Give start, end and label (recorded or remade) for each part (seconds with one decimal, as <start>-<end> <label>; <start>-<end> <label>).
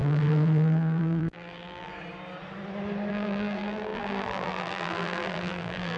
0.0-1.9 remade; 1.9-3.1 recorded; 3.1-6.0 remade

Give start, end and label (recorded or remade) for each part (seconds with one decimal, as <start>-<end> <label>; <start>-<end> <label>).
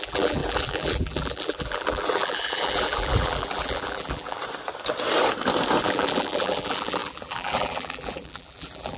0.0-4.4 remade; 4.4-5.8 recorded; 5.8-9.0 remade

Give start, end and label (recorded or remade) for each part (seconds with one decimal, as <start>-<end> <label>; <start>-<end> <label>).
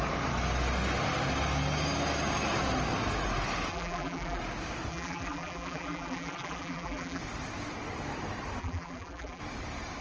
0.0-3.7 recorded; 3.7-4.4 remade; 4.4-4.9 recorded; 4.9-7.2 remade; 7.2-8.6 recorded; 8.6-9.4 remade; 9.4-10.0 recorded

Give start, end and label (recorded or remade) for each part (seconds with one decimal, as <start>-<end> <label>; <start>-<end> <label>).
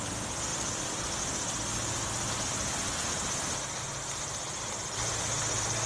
0.0-0.5 recorded; 0.5-1.2 remade; 1.2-1.7 recorded; 1.7-5.2 remade; 5.2-5.9 recorded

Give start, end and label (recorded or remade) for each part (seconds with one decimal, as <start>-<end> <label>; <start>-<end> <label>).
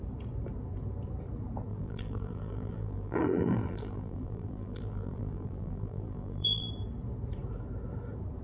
0.0-1.7 recorded; 1.7-6.7 remade; 6.7-8.4 recorded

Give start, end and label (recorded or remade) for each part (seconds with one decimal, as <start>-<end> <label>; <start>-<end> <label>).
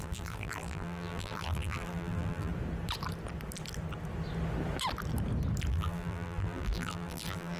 0.0-2.5 remade; 2.5-5.7 recorded; 5.7-7.6 remade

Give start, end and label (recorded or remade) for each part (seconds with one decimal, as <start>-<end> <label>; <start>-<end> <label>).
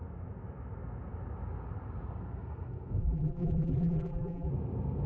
0.0-3.0 recorded; 3.0-4.5 remade; 4.5-5.1 recorded